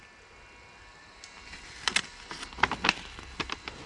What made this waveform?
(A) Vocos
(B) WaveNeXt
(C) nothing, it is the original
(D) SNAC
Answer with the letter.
C